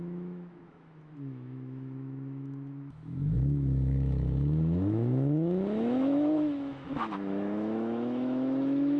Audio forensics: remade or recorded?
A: remade